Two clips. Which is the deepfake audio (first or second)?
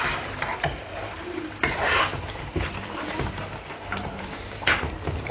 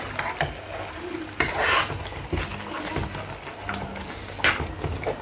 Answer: first